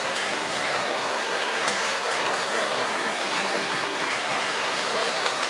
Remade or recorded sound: remade